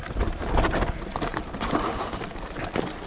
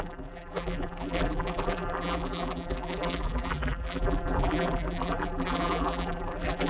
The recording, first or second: first